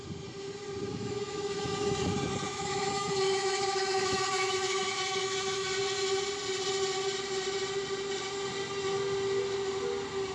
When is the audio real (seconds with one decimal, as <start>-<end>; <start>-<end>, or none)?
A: 0.0-0.9; 2.0-2.5; 5.7-10.3